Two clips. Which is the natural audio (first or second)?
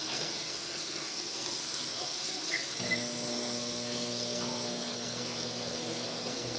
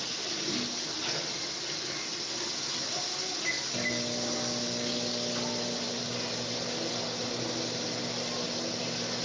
second